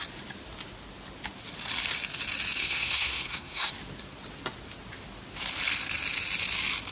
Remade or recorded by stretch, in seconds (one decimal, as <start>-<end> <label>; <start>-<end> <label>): 0.0-2.6 recorded; 2.6-3.7 remade; 3.7-6.9 recorded